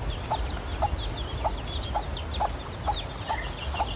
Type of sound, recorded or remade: recorded